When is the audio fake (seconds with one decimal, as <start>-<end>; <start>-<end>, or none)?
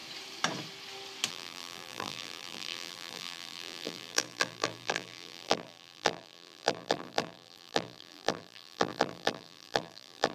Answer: 1.3-10.3